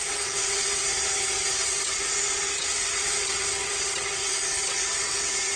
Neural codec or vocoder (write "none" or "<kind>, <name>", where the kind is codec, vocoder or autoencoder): vocoder, WaveNeXt